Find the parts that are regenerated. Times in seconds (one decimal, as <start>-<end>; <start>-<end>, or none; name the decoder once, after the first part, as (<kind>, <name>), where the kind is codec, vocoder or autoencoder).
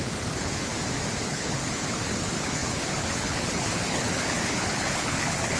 0.0-0.7 (codec, HILCodec); 1.2-5.6